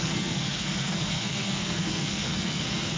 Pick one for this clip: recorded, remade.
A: remade